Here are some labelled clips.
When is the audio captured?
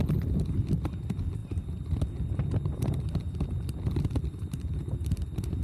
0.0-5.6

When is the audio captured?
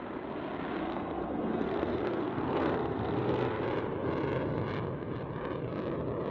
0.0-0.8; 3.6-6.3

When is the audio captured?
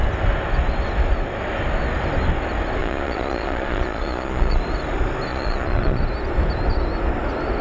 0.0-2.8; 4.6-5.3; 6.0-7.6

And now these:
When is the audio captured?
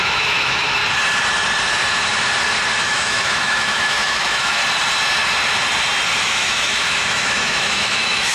0.8-2.8; 4.6-6.2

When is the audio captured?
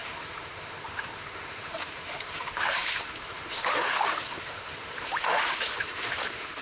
none